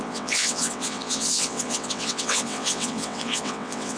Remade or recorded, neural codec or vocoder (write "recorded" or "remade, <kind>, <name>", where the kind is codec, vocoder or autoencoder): remade, vocoder, WaveNeXt